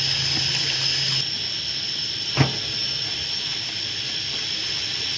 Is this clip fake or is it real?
real